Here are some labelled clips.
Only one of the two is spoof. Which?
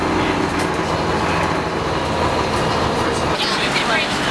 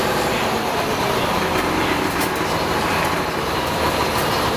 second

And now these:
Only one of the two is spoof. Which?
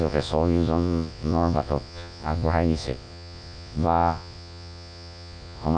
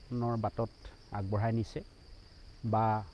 first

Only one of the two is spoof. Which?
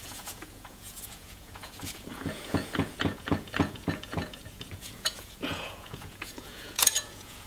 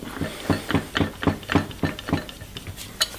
first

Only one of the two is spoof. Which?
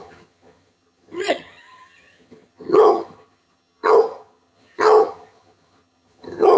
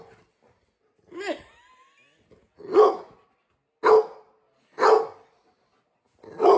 first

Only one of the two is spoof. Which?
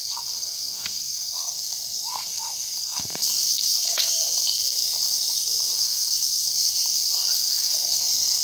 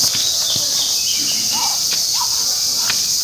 first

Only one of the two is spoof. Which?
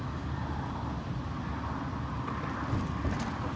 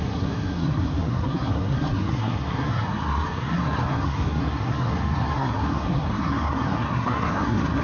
second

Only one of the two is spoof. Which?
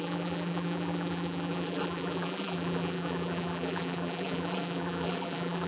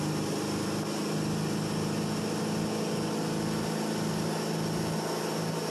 first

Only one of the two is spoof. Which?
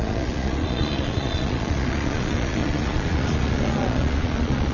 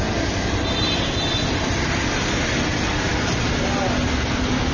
first